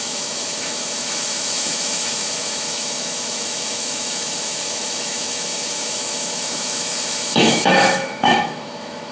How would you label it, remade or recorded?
remade